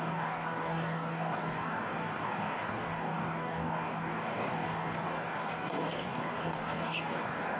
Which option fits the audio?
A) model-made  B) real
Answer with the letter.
A